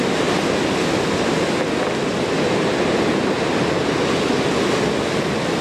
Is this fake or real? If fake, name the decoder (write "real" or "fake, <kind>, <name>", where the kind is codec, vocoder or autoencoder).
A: real